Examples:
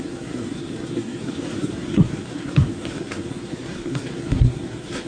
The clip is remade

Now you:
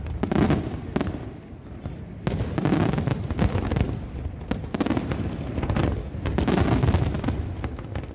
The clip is recorded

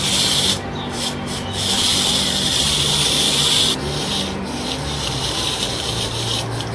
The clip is remade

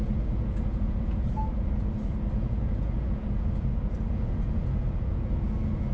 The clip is remade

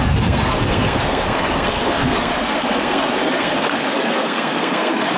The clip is remade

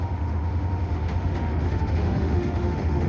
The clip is remade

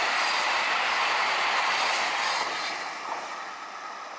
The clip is recorded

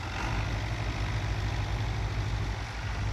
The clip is recorded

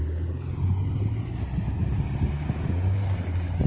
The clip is recorded